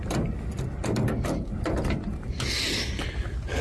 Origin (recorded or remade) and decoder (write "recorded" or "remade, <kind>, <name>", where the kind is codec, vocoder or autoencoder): recorded